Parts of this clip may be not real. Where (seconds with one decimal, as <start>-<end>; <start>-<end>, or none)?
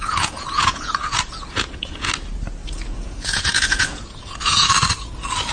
0.0-2.1; 2.6-4.7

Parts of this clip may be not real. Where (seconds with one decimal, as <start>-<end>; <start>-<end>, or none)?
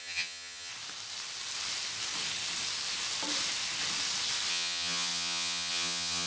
0.0-0.7; 4.5-6.3